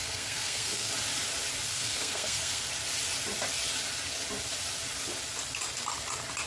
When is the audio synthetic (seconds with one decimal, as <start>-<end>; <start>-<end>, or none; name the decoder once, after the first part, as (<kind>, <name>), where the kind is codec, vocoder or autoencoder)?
0.0-0.9 (codec, SNAC); 1.7-2.7